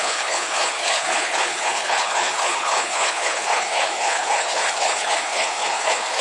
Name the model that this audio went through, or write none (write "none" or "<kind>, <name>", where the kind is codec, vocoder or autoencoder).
codec, HILCodec